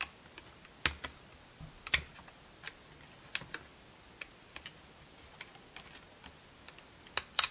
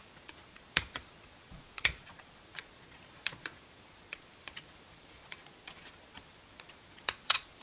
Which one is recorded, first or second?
first